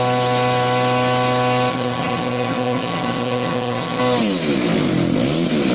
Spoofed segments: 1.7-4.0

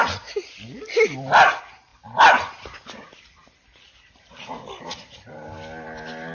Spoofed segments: none